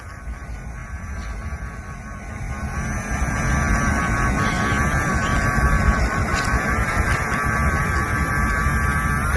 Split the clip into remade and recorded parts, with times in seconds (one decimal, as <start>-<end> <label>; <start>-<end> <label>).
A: 0.0-9.4 recorded